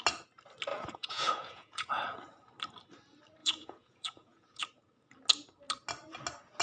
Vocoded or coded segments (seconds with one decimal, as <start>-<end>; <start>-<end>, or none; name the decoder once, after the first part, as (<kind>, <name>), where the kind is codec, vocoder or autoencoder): 0.7-2.0 (vocoder, Vocos); 3.4-4.6